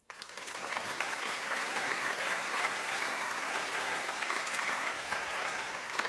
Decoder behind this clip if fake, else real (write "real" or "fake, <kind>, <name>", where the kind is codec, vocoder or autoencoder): fake, codec, SNAC